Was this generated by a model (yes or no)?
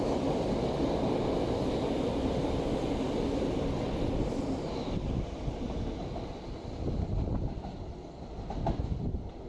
no